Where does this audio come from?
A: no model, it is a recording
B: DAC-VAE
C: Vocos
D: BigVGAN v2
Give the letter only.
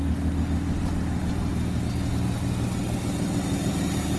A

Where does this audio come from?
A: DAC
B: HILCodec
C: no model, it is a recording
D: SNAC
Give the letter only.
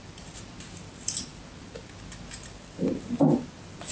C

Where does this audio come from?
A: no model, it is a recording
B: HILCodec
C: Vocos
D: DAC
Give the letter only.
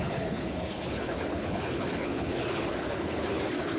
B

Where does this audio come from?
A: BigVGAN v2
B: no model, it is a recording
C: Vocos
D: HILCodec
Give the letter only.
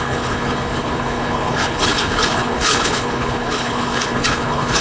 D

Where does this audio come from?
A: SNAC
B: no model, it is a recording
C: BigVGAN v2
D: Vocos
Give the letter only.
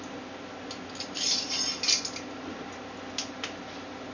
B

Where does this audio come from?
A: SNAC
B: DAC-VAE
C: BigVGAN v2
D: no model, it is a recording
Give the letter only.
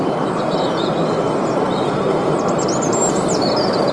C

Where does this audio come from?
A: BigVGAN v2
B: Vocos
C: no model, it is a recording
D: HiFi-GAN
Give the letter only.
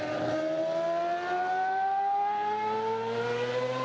C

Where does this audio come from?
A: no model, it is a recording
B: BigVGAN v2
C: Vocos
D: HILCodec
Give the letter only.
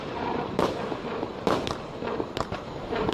B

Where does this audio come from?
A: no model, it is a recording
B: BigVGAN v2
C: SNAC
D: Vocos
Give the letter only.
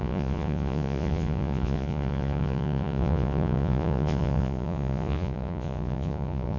D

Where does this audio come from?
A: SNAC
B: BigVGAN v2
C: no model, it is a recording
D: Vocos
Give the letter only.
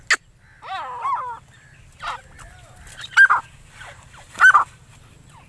C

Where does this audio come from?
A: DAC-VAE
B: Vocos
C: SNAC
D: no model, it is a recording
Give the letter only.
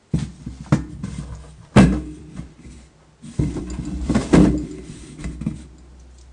D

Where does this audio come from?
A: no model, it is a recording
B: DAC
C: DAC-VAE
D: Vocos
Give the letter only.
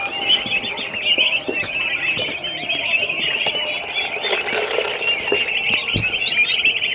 A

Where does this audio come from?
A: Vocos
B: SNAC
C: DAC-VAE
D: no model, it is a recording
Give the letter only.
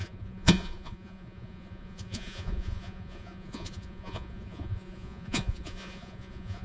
A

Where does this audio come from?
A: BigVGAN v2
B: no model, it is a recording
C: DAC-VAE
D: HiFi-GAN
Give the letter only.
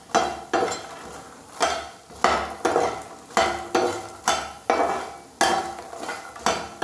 B